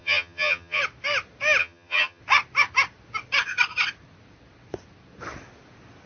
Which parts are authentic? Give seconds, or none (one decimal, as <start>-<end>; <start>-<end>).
0.8-1.6; 2.2-6.1